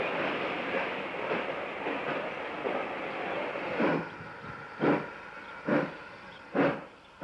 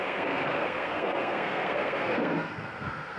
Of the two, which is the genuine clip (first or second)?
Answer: first